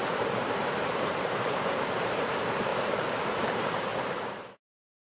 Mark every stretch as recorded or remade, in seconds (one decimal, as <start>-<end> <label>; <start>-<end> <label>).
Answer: 0.0-2.7 remade; 2.7-3.3 recorded; 3.3-3.9 remade; 3.9-5.0 recorded